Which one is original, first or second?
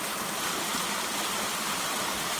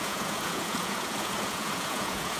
first